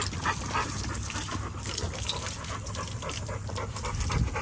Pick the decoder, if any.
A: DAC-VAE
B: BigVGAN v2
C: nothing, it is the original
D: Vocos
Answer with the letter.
C